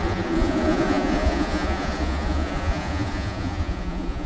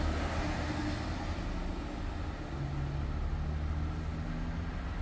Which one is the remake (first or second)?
first